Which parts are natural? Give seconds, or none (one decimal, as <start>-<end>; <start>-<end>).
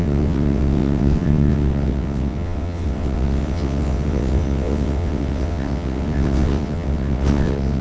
none